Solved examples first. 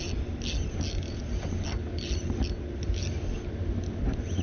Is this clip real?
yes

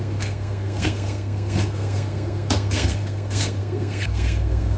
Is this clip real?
no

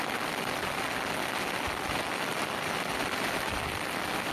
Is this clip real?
yes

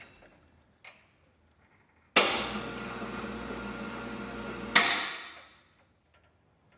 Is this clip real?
yes